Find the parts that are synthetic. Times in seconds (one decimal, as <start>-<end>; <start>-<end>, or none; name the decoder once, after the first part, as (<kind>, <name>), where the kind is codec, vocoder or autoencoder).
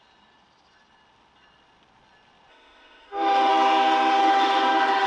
2.5-3.5 (autoencoder, DAC-VAE); 4.2-5.1